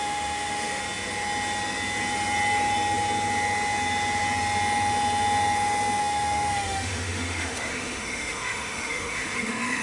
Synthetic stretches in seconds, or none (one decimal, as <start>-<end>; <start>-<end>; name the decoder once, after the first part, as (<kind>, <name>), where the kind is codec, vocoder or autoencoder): 0.0-0.8 (autoencoder, DAC-VAE); 6.0-9.8